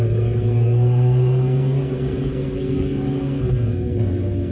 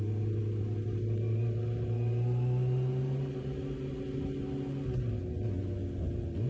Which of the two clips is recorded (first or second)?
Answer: second